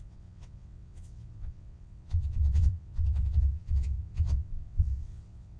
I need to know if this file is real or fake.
fake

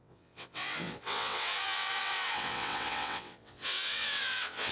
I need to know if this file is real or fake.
fake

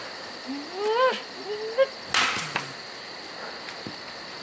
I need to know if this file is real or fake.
real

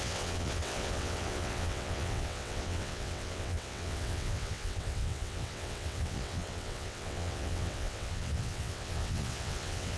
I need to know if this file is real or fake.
fake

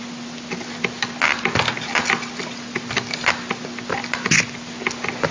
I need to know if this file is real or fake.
real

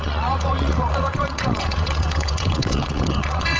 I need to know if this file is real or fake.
fake